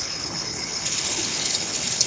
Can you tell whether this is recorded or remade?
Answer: remade